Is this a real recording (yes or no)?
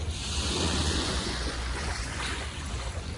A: no